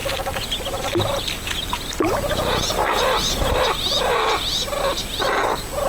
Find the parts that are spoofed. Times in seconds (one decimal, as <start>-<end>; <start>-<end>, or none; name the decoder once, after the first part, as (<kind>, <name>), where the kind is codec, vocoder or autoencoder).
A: none